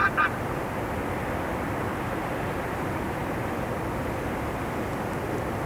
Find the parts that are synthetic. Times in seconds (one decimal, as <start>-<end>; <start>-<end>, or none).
1.8-3.4